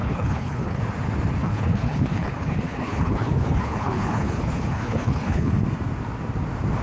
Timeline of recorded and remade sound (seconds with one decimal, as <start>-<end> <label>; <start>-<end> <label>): 0.0-0.8 remade; 0.8-1.4 recorded; 1.4-5.5 remade; 5.5-6.8 recorded